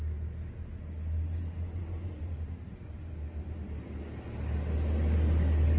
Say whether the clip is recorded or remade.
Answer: recorded